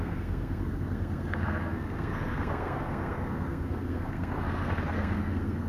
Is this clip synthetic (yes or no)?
yes